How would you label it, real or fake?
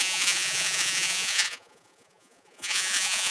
fake